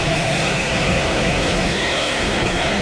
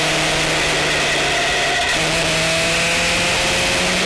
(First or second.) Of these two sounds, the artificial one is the first